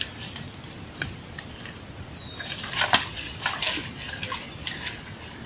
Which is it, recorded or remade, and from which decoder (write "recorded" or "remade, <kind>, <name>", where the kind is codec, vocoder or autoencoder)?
recorded